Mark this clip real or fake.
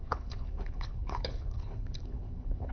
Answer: fake